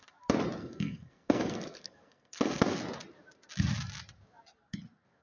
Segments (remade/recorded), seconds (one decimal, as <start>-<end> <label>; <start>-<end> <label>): 0.0-0.6 recorded; 0.6-2.8 remade; 2.8-5.2 recorded